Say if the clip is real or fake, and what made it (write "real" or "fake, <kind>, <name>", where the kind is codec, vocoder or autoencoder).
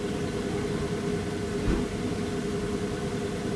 real